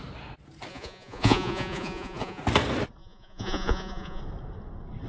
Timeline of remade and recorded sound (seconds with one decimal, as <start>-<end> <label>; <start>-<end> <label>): 0.0-0.7 recorded; 0.7-2.4 remade; 2.4-3.0 recorded; 3.0-4.2 remade; 4.2-5.1 recorded